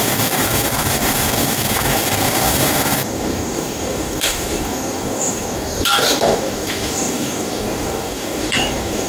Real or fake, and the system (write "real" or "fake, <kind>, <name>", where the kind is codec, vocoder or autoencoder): fake, codec, DAC